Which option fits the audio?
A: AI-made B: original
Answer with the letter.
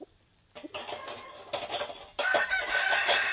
B